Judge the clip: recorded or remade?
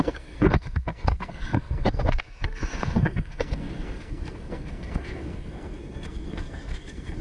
remade